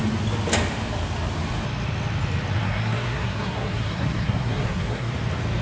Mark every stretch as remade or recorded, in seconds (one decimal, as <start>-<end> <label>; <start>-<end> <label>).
0.0-2.6 recorded; 2.6-5.1 remade; 5.1-5.6 recorded